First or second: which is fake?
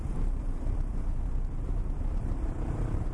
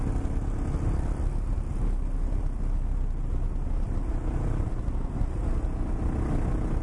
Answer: first